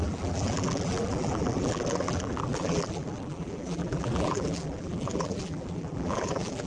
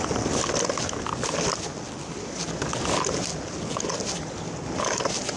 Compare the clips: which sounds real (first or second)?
second